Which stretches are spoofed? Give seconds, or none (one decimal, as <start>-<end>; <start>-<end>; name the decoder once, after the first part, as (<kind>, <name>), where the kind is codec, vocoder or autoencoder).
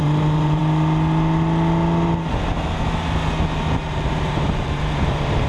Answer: 0.0-0.6 (vocoder, BigVGAN v2); 3.9-5.5